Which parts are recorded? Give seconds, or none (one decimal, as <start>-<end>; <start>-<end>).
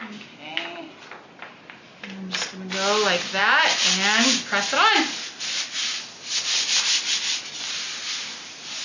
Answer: 0.0-8.8